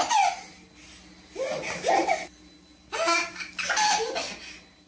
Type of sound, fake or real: real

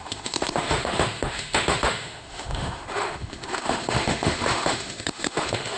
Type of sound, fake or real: fake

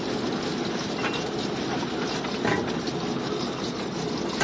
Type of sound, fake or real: real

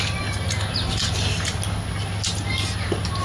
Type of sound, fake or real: real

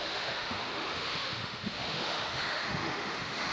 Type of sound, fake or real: fake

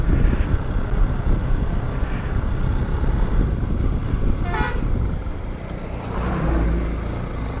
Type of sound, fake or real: real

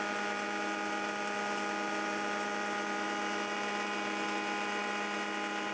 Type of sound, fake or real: real